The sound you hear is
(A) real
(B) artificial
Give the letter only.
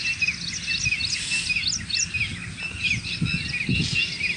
A